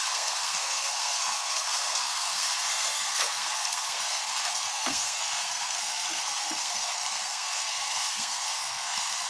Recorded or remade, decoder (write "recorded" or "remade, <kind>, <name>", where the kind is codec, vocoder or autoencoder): remade, codec, SNAC